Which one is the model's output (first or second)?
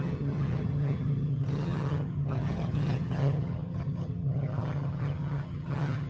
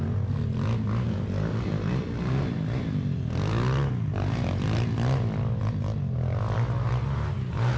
first